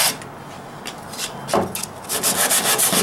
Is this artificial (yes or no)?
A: no